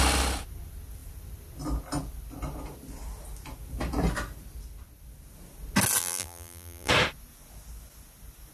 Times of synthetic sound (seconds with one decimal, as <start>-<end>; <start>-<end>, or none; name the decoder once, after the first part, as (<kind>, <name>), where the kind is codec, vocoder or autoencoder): 6.0-6.9 (vocoder, BigVGAN v2)